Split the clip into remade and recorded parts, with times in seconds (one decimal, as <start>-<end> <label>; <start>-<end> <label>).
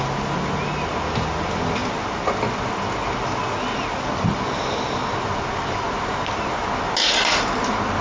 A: 0.0-8.0 recorded